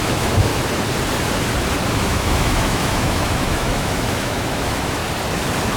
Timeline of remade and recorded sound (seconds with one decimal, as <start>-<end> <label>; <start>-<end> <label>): 0.0-0.5 remade; 0.5-1.9 recorded; 1.9-5.0 remade; 5.0-5.8 recorded